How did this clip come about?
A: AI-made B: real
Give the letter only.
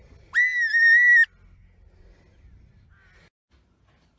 B